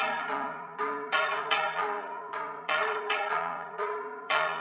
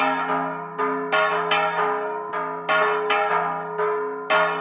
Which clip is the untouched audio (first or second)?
second